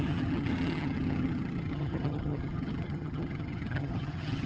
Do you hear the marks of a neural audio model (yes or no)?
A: yes